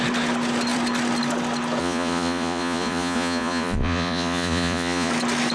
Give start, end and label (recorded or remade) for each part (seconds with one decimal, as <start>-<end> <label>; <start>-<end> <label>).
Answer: 0.0-1.8 recorded; 1.8-5.1 remade; 5.1-5.5 recorded